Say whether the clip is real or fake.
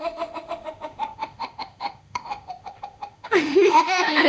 fake